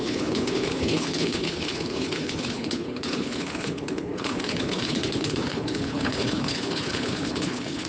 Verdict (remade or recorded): remade